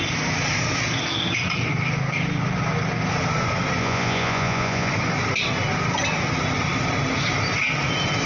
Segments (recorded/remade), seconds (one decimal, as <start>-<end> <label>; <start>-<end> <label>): 0.0-3.8 recorded; 3.8-4.9 remade; 4.9-8.3 recorded